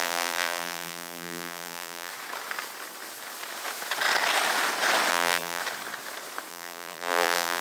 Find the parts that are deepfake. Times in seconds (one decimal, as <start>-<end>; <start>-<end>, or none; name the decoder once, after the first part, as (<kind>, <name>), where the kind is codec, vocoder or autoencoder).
0.0-2.1 (vocoder, BigVGAN v2); 5.1-5.6; 6.5-7.6